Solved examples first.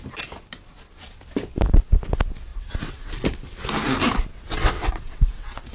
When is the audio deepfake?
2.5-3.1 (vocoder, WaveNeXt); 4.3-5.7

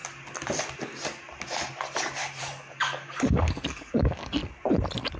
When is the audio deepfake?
2.4-4.4 (codec, DAC)

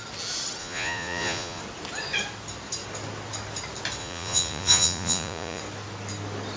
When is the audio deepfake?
0.6-1.6 (vocoder, Vocos); 4.0-5.6

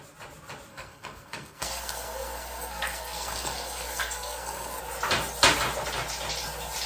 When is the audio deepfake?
0.7-4.8 (codec, SNAC)

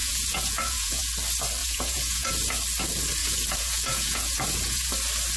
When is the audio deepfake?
0.0-1.0 (vocoder, Vocos); 1.6-2.3; 3.2-4.9